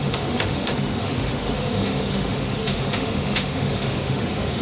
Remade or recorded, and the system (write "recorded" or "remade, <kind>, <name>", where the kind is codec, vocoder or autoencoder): remade, autoencoder, DAC-VAE